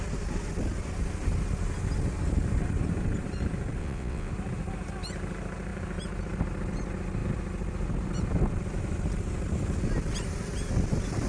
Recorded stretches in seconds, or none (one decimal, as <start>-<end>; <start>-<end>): 0.0-3.8; 4.3-11.3